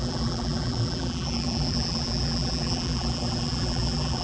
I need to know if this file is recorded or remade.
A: remade